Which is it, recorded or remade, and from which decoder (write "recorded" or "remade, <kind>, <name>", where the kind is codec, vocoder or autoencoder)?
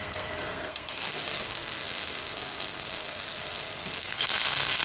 remade, codec, SNAC